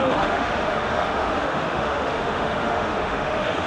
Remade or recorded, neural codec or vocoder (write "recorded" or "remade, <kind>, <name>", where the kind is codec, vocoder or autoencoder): remade, autoencoder, DAC-VAE